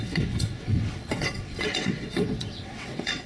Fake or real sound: fake